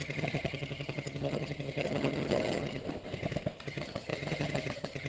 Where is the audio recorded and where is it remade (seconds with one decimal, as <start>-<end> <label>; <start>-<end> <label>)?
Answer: 0.0-2.8 remade; 2.8-3.6 recorded; 3.6-5.1 remade

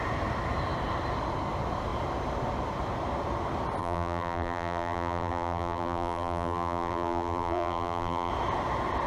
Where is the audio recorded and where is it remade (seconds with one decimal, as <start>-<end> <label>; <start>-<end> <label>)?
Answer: 0.0-3.8 recorded; 3.8-8.3 remade; 8.3-9.1 recorded

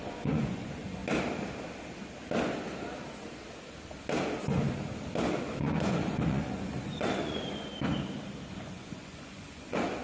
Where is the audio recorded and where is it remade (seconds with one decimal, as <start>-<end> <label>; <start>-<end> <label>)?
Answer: 0.0-1.0 remade; 1.0-5.4 recorded; 5.4-7.7 remade; 7.7-8.5 recorded; 8.5-10.0 remade

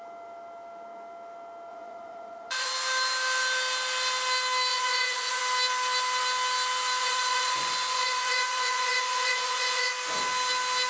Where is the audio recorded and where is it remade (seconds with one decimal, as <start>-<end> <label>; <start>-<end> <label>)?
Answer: 0.0-1.7 recorded; 1.7-2.7 remade; 2.7-4.7 recorded; 4.7-5.4 remade; 5.4-7.0 recorded; 7.0-9.9 remade; 9.9-10.9 recorded

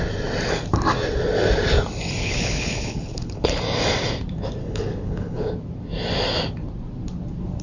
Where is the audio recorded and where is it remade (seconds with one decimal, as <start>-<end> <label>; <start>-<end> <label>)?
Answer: 0.0-2.2 recorded; 2.2-3.6 remade; 3.6-4.6 recorded; 4.6-5.5 remade; 5.5-7.6 recorded